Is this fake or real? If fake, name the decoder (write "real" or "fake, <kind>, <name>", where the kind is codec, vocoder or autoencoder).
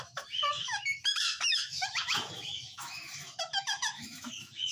fake, autoencoder, DAC-VAE